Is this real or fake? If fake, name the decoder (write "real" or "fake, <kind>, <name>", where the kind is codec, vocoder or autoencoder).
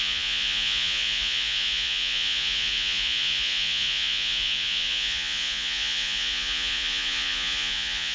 fake, vocoder, Vocos